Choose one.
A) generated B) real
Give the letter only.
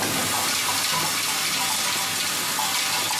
B